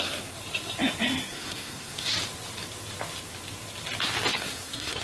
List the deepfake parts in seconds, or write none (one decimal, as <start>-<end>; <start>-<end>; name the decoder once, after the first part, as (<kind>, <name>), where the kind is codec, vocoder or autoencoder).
0.0-0.4 (codec, SNAC); 1.3-2.1; 4.3-5.0